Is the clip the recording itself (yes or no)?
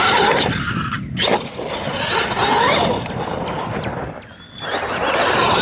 yes